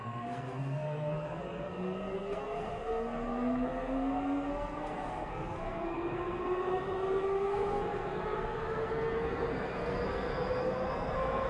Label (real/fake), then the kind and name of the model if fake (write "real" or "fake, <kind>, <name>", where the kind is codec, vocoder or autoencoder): fake, codec, SNAC